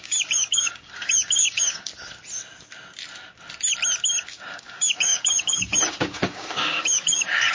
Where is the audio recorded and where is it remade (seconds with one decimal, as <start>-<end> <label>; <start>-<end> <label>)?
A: 0.0-1.9 remade; 1.9-4.2 recorded; 4.2-7.5 remade